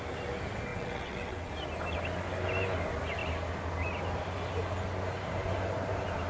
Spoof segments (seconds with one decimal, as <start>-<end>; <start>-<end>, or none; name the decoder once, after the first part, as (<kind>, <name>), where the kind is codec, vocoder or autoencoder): 0.7-1.5 (vocoder, WaveNeXt)